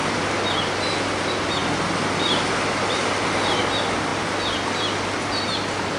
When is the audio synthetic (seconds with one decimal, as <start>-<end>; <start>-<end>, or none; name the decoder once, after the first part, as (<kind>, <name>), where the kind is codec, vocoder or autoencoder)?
none